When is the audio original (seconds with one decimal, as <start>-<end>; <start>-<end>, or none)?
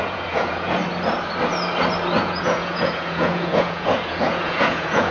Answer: 0.8-2.2